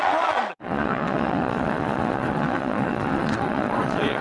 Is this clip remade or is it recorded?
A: remade